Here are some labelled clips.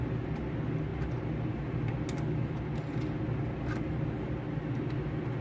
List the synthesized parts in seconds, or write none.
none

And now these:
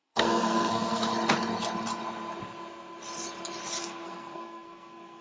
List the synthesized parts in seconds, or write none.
0.0-1.0 (codec, SNAC); 3.8-5.2

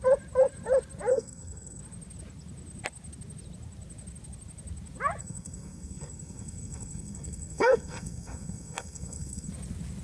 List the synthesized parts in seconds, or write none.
1.1-1.8 (codec, SNAC); 5.2-9.5

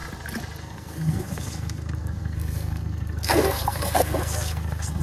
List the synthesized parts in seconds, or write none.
0.6-5.0 (codec, SNAC)

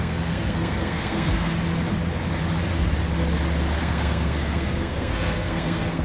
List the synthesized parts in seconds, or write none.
0.0-1.5 (codec, SNAC); 3.8-6.0